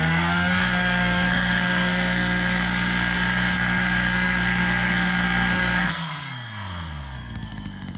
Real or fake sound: fake